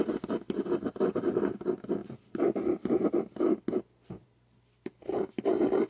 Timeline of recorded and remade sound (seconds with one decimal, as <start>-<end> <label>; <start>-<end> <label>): 0.0-5.9 recorded

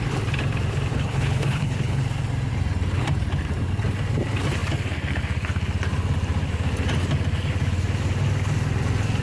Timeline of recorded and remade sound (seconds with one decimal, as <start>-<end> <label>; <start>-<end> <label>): 0.0-0.9 recorded; 0.9-2.0 remade; 2.0-9.2 recorded

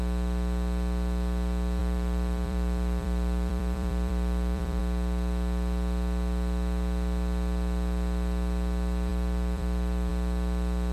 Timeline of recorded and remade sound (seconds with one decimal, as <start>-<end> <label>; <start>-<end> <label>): 0.0-1.8 recorded; 1.8-4.8 remade; 4.8-9.1 recorded; 9.1-10.1 remade; 10.1-10.9 recorded

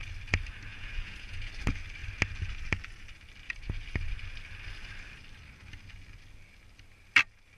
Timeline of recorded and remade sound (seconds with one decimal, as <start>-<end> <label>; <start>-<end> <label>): 0.0-0.7 recorded; 0.7-1.5 remade; 1.5-7.6 recorded

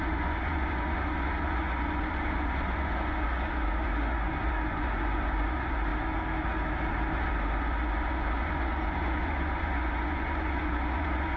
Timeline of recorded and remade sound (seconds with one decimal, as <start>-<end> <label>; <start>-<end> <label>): 0.0-5.9 remade; 5.9-7.2 recorded; 7.2-11.4 remade